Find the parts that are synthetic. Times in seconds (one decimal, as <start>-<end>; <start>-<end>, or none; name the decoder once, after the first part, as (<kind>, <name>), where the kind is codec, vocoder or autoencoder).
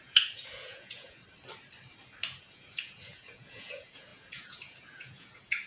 0.0-1.2 (vocoder, Vocos); 2.4-5.7